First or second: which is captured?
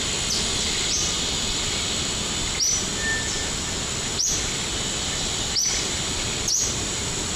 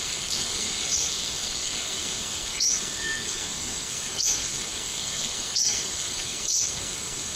first